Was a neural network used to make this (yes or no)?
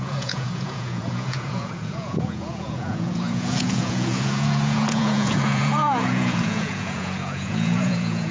yes